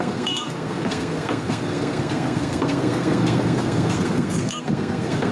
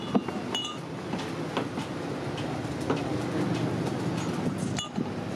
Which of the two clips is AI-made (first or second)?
first